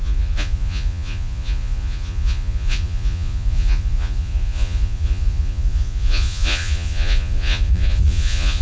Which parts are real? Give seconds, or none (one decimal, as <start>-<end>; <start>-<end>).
none